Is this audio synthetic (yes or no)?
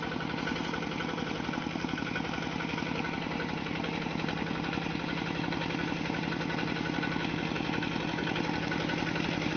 no